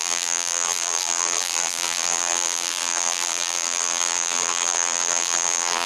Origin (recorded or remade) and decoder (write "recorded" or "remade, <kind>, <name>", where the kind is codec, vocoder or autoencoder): remade, vocoder, BigVGAN v2